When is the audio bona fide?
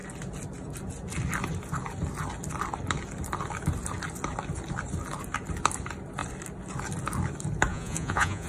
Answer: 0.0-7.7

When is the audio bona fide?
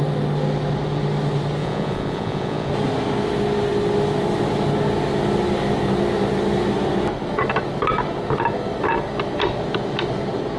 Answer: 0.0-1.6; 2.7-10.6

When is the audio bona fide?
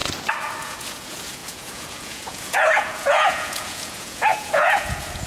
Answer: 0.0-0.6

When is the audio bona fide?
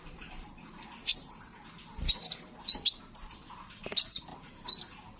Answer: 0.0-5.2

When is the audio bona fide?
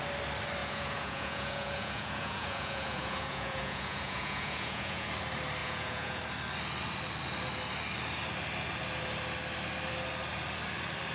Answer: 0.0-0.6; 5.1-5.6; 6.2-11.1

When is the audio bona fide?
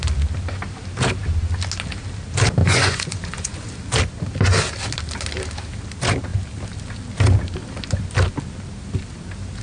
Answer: 0.0-2.6; 3.7-9.6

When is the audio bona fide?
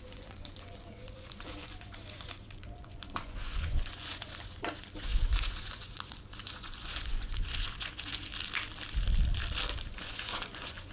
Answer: 8.3-10.0